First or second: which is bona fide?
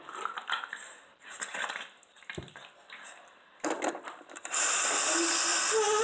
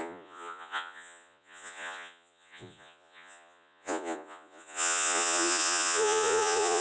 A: first